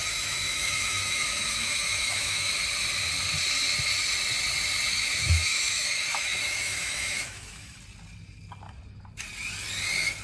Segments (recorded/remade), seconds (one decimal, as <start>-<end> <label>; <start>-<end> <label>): 0.0-2.5 remade; 2.5-4.9 recorded; 4.9-7.8 remade; 7.8-10.2 recorded